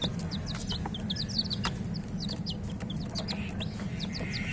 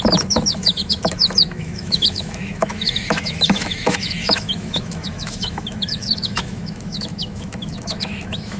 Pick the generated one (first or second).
second